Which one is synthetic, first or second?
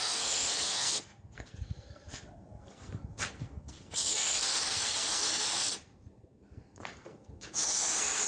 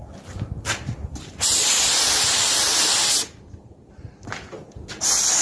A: first